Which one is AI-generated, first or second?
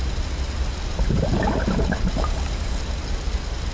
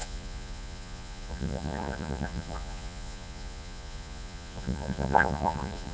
second